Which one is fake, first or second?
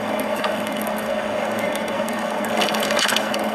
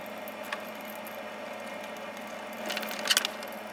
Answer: first